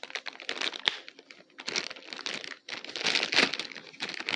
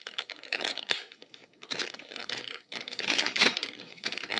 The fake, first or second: second